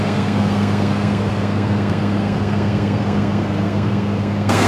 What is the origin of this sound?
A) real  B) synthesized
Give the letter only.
B